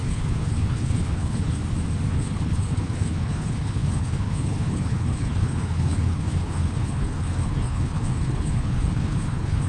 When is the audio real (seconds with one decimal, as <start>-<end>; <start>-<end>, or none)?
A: 1.6-2.1